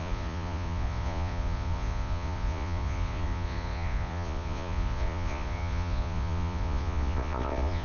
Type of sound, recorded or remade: remade